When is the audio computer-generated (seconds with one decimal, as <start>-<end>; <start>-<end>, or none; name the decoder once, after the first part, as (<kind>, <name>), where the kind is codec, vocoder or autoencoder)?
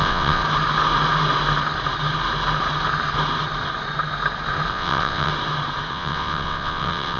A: 0.0-0.4 (vocoder, WaveNeXt); 4.7-5.3; 5.9-7.2